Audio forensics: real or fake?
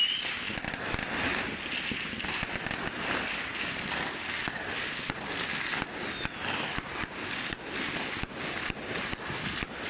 real